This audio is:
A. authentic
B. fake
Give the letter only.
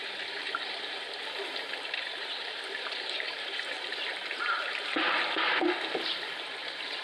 B